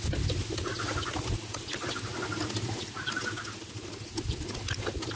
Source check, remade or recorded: recorded